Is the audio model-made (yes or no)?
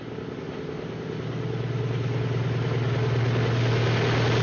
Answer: no